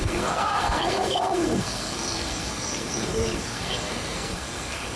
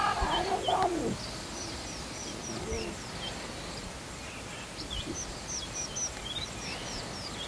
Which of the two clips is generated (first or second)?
first